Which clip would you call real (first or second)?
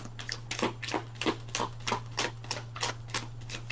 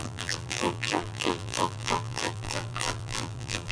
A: first